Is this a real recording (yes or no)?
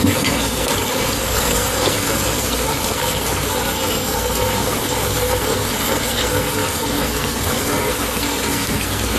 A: no